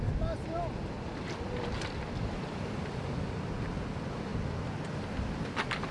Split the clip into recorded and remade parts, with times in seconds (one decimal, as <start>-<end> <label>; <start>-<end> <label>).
0.0-5.9 recorded

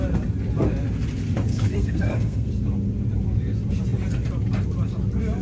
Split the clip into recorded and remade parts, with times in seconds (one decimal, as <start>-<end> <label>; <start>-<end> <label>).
0.0-1.5 recorded; 1.5-2.5 remade; 2.5-5.4 recorded

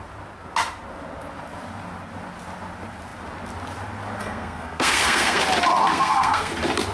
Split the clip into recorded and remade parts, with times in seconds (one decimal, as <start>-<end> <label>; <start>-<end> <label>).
0.0-4.2 recorded; 4.2-5.4 remade; 5.4-5.9 recorded; 5.9-6.5 remade; 6.5-6.9 recorded

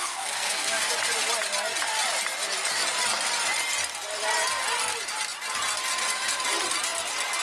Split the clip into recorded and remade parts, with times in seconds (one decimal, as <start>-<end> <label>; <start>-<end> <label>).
0.0-0.9 remade; 0.9-7.4 recorded

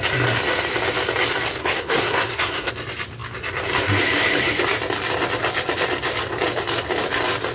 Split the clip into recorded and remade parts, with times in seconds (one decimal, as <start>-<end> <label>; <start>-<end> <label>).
0.0-1.6 recorded; 1.6-2.7 remade; 2.7-7.5 recorded